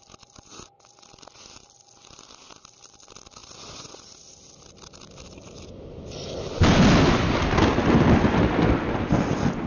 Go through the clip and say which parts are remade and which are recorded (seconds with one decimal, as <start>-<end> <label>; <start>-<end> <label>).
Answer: 0.0-9.7 recorded